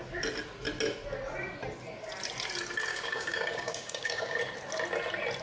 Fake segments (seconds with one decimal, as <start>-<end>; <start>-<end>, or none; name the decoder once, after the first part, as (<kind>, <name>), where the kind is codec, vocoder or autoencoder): 2.9-4.4 (codec, DAC)